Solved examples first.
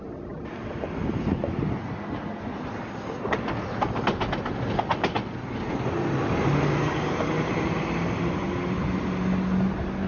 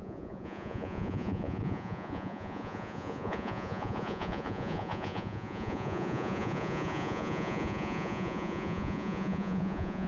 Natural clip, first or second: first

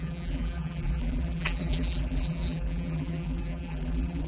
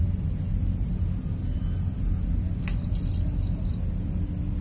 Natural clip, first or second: second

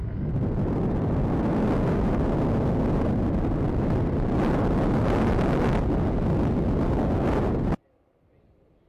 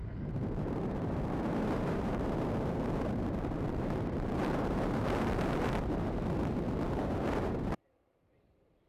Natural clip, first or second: first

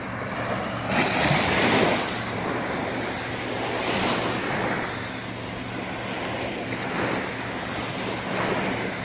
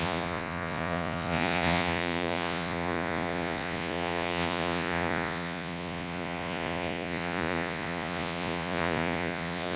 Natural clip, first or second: first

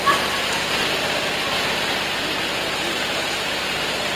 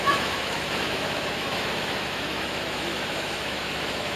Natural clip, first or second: first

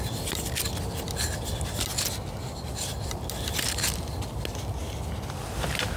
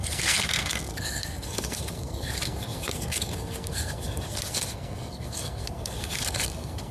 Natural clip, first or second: first